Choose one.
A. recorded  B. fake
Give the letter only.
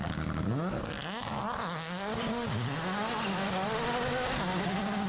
A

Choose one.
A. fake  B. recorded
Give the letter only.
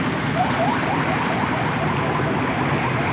B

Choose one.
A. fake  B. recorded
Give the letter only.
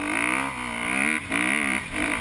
B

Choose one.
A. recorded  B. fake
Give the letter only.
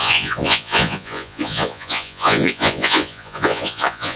B